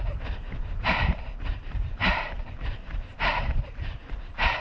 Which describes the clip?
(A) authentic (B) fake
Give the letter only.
B